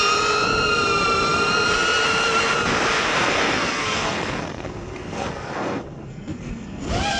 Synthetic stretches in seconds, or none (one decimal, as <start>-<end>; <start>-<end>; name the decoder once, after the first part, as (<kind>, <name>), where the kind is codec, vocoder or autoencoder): 3.1-6.8 (codec, SNAC)

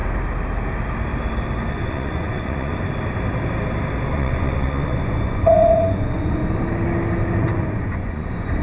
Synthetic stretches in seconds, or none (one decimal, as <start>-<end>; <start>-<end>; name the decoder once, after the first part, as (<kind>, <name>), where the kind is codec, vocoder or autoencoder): 1.7-2.7 (vocoder, Vocos); 4.1-6.4; 7.4-8.6

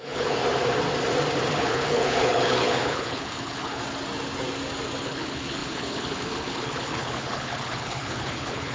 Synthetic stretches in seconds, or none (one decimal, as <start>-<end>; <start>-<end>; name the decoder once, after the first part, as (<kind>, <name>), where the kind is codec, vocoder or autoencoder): 0.0-0.4 (codec, HILCodec); 1.5-3.8; 5.0-8.7

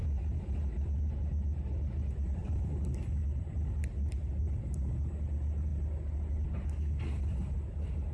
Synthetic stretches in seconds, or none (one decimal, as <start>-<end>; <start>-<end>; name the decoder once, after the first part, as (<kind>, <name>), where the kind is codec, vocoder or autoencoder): none

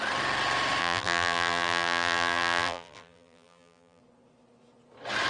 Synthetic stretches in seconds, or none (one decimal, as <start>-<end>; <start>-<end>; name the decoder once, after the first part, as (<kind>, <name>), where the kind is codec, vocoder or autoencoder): 0.8-4.0 (vocoder, BigVGAN v2)

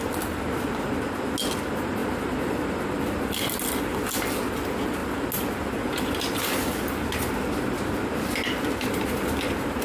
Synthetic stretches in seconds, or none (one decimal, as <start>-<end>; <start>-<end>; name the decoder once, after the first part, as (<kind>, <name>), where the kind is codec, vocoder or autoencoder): none

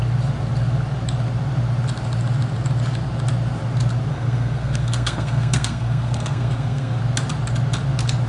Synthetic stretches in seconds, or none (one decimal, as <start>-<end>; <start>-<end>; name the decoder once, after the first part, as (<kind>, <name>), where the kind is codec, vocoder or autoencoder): 4.1-7.0 (codec, SNAC)

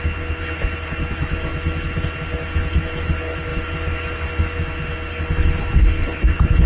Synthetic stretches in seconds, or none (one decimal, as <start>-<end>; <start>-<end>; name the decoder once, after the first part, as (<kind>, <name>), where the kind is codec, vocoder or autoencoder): none